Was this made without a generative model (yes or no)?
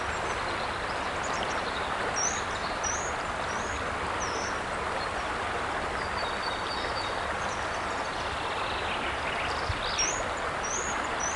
yes